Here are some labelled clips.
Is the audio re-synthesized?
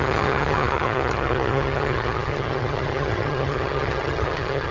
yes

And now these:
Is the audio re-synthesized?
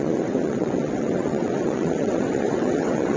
yes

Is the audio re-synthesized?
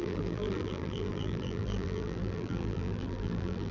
yes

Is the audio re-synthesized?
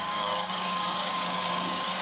yes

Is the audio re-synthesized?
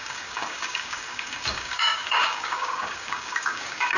yes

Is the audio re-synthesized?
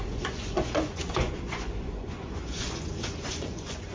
yes